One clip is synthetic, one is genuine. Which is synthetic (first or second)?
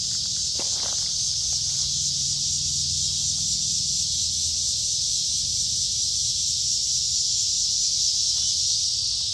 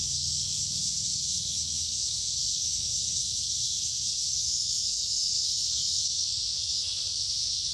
second